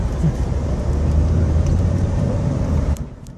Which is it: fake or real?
fake